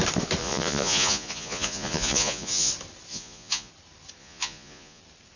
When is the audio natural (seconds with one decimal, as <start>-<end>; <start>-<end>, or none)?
0.0-0.4; 2.7-3.1; 3.7-4.2; 5.0-5.4